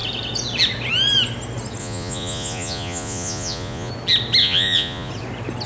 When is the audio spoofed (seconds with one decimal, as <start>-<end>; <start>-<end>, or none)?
1.8-3.9; 4.4-5.1